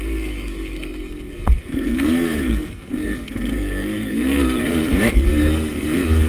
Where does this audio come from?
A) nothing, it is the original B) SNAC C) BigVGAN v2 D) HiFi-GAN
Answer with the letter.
B